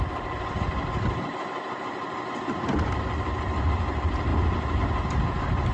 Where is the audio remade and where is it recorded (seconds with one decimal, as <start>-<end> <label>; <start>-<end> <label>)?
0.0-5.7 recorded